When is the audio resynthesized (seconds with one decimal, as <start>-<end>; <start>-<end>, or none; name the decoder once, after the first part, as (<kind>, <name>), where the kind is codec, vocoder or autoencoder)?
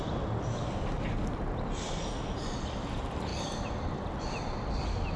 none